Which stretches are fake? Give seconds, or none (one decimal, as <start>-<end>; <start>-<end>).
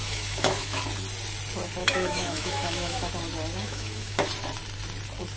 0.0-0.8; 1.8-3.1; 3.6-4.3